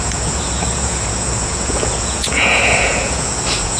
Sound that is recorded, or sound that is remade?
remade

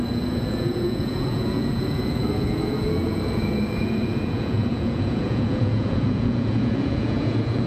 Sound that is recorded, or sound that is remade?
remade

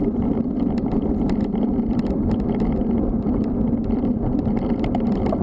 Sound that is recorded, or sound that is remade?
recorded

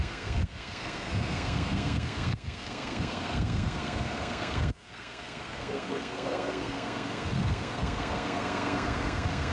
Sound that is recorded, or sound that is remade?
remade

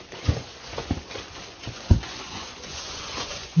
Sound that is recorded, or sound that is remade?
remade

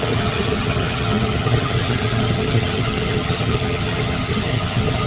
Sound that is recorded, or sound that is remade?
remade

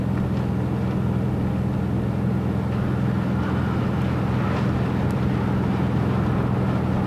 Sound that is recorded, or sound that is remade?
recorded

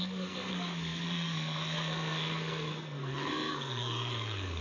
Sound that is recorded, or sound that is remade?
remade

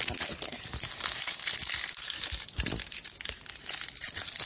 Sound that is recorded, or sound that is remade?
recorded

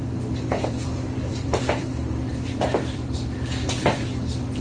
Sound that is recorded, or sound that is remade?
remade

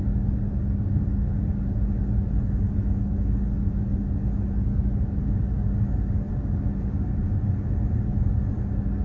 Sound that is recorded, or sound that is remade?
recorded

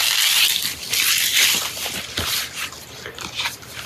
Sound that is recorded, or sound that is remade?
recorded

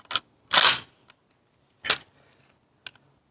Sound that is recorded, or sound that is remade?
recorded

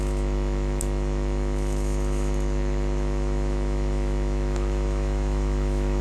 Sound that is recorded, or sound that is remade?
remade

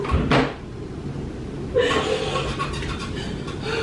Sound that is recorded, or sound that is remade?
recorded